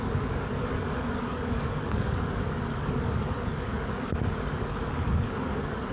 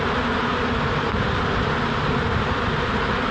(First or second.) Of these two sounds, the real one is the second